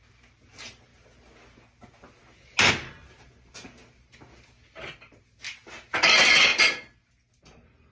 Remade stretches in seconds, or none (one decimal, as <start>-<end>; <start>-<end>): none